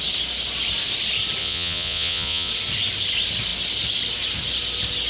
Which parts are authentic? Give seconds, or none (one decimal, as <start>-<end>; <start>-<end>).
0.0-1.4; 2.5-5.1